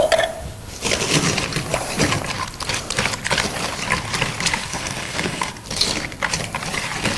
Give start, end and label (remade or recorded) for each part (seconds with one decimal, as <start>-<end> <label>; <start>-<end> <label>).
0.0-4.6 recorded; 4.6-5.5 remade; 5.5-7.2 recorded